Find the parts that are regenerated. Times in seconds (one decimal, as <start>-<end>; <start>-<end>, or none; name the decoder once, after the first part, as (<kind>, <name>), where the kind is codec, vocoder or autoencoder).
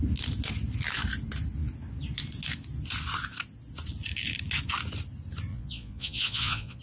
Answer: 5.5-6.8 (vocoder, Vocos)